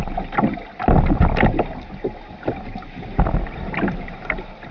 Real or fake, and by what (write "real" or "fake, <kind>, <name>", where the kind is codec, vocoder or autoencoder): real